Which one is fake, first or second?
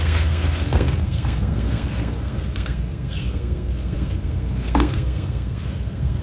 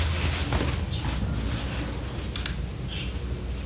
first